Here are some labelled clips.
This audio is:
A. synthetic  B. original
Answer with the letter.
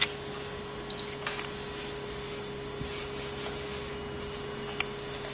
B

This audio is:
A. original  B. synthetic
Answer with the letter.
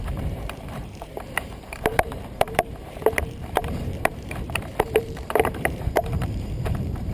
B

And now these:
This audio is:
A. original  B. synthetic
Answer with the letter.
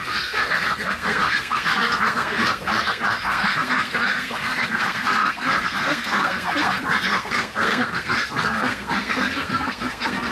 B